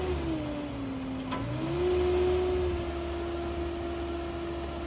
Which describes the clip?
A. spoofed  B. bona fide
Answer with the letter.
B